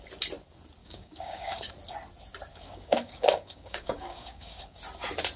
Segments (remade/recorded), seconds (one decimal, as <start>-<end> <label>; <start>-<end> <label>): 0.0-0.8 recorded; 0.8-1.7 remade; 1.7-2.5 recorded; 2.5-4.8 remade; 4.8-5.4 recorded